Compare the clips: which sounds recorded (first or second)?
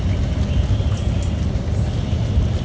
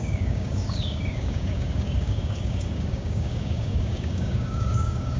first